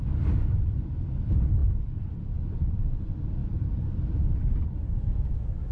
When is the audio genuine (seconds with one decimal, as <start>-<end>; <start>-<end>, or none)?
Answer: 0.0-1.6; 2.7-3.4; 4.8-5.7